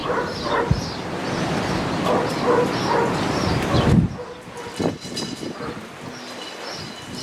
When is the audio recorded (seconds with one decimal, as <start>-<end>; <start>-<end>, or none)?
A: 0.0-7.2